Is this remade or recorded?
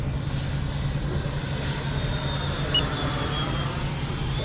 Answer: recorded